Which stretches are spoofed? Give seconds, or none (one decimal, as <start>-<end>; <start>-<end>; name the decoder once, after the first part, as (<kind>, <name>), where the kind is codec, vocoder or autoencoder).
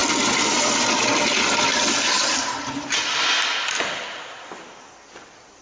none